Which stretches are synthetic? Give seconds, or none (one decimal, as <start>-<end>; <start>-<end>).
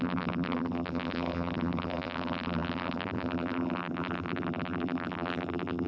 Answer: 0.0-5.9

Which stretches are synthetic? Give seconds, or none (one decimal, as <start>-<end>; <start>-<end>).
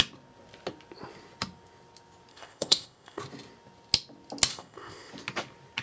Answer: 2.3-3.2; 4.5-5.1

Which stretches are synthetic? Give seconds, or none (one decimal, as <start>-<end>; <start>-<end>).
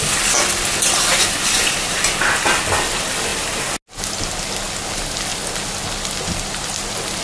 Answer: none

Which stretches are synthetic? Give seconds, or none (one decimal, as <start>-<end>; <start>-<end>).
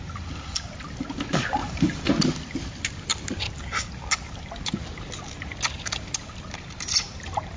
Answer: 1.6-2.1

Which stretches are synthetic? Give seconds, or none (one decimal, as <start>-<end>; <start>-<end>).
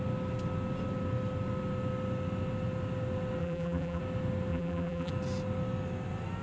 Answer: 3.4-4.0; 4.5-5.1